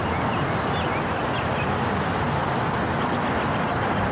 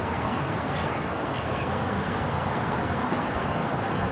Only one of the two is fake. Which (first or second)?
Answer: second